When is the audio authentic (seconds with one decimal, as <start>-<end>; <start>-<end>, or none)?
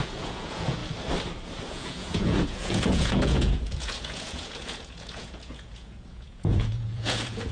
0.8-1.7